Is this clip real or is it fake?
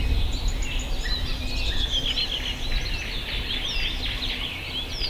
real